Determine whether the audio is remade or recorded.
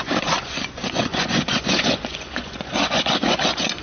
remade